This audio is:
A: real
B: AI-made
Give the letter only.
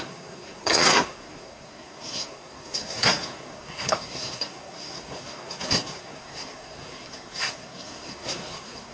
B